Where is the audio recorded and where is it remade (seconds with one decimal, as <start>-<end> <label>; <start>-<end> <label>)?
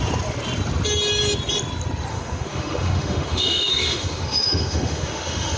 0.0-2.1 recorded; 2.1-5.6 remade